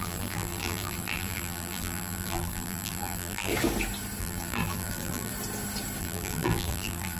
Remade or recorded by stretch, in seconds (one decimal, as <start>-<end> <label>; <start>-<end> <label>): 0.0-3.5 remade; 3.5-4.2 recorded; 4.2-5.3 remade; 5.3-6.0 recorded; 6.0-7.2 remade